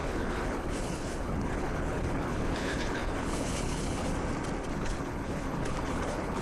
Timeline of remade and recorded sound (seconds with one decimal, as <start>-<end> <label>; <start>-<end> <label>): 0.0-4.1 remade; 4.1-4.7 recorded; 4.7-6.4 remade